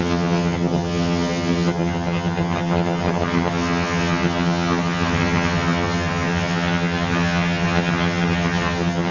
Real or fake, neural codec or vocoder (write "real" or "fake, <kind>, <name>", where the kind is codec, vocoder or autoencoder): fake, vocoder, HiFi-GAN